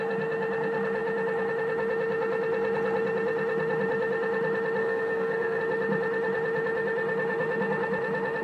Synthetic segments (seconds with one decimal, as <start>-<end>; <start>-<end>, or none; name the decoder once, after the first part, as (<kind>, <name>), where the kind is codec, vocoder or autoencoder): 4.8-5.6 (codec, SNAC)